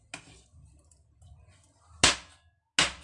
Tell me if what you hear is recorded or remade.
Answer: recorded